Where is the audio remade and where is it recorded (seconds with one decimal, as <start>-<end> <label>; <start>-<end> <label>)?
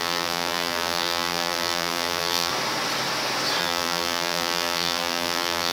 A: 0.0-2.5 remade; 2.5-3.6 recorded; 3.6-5.7 remade